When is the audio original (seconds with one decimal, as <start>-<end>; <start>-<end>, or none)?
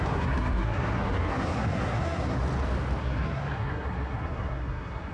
2.4-3.0